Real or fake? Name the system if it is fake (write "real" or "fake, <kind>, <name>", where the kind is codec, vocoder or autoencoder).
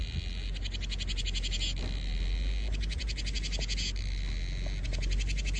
real